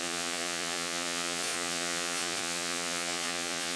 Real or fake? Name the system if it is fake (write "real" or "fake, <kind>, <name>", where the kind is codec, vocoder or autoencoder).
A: fake, vocoder, Vocos